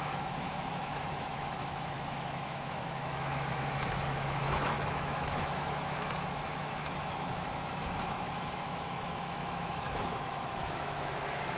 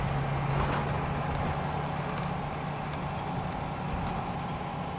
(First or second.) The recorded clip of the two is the second